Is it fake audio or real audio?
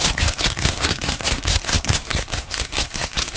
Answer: fake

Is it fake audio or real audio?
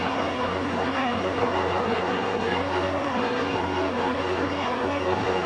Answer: fake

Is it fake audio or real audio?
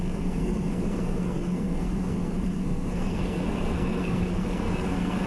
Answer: fake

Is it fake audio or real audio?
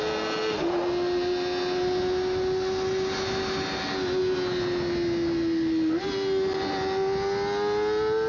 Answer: real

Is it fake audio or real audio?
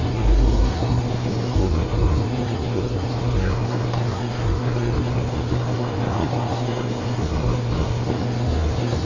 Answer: fake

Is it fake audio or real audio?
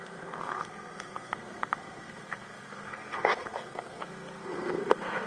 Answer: fake